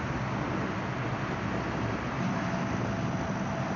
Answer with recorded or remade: recorded